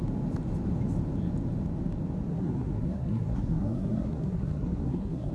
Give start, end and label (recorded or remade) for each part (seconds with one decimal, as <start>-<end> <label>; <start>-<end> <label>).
0.0-2.3 recorded; 2.3-5.3 remade